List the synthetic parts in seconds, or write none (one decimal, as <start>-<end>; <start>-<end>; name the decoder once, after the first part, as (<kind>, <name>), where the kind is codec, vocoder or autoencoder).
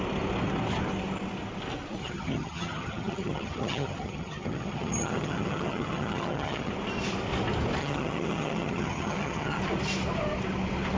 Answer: 2.0-6.7 (vocoder, HiFi-GAN); 7.8-9.6